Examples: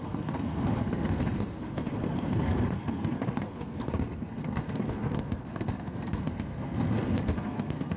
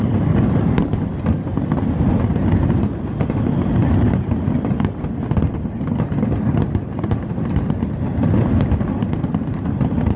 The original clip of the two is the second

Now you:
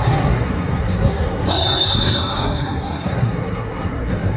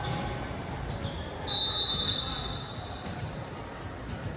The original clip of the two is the second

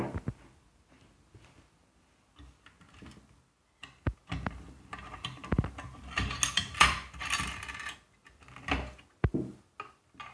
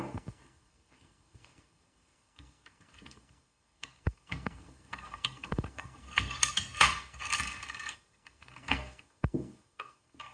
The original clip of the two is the first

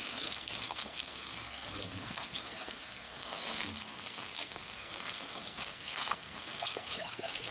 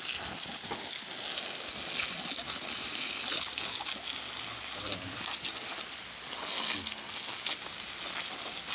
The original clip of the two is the second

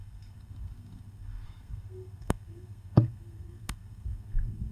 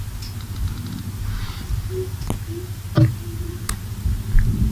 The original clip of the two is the second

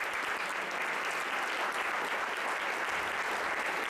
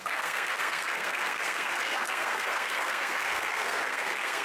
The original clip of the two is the first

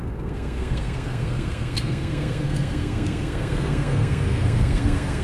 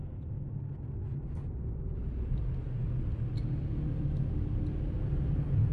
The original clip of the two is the second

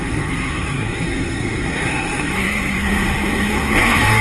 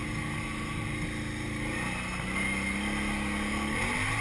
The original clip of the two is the second